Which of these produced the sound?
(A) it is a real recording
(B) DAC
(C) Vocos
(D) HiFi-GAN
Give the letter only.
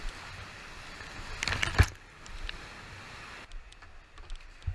A